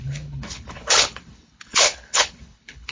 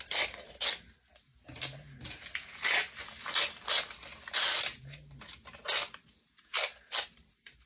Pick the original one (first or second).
second